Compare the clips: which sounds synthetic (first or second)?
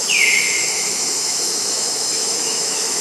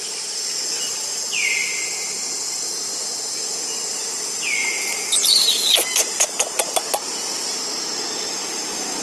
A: first